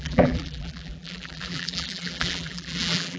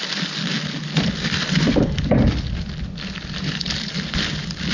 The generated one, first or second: first